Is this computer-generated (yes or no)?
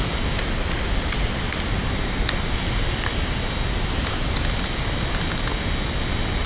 no